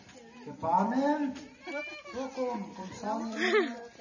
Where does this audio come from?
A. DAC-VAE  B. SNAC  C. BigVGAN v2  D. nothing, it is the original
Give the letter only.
D